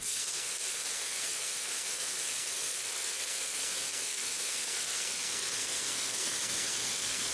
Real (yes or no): no